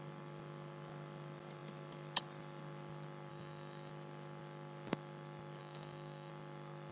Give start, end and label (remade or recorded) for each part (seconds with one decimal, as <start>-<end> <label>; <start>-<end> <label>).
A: 0.0-3.3 recorded; 3.3-3.9 remade; 3.9-5.6 recorded; 5.6-6.3 remade; 6.3-6.9 recorded